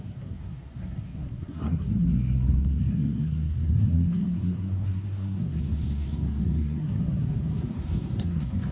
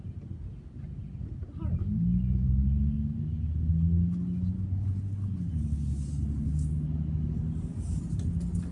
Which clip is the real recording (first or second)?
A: second